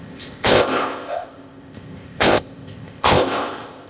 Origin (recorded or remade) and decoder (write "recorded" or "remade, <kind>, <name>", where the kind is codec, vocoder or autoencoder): remade, codec, ZipCodec